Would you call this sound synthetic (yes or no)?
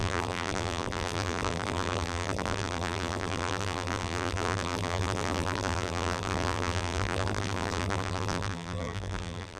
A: yes